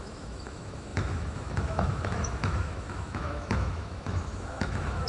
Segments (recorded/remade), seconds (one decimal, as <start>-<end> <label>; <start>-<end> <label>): 0.0-5.1 remade